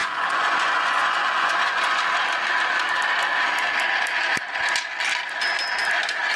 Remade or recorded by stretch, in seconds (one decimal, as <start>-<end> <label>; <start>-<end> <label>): 0.0-2.0 remade; 2.0-6.4 recorded